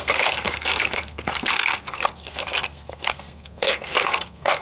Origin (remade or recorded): remade